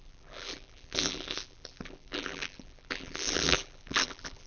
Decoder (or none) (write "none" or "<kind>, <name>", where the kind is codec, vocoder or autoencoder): vocoder, BigVGAN v2